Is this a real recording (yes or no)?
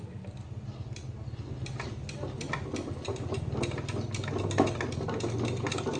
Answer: yes